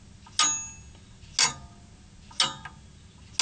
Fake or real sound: real